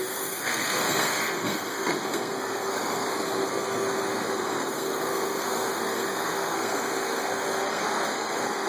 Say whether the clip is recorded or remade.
remade